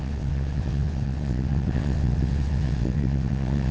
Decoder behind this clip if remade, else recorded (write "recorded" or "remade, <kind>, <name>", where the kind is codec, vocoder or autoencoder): remade, vocoder, WaveNeXt